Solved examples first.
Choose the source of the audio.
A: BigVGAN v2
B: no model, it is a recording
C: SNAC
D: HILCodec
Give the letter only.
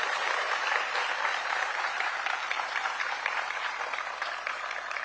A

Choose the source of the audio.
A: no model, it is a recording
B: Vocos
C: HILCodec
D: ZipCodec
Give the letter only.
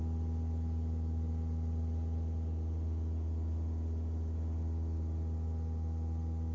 A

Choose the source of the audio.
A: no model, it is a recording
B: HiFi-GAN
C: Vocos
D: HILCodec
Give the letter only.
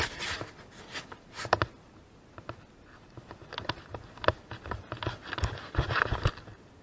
A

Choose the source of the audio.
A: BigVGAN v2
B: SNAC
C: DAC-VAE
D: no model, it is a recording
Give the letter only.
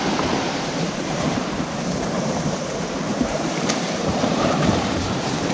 A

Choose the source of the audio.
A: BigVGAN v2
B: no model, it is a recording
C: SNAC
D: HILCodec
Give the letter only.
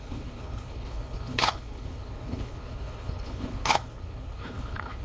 D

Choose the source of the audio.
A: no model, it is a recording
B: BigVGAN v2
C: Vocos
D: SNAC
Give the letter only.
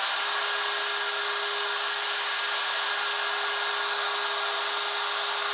A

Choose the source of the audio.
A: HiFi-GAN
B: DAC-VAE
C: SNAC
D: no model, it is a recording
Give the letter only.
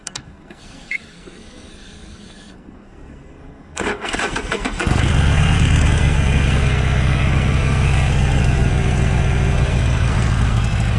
C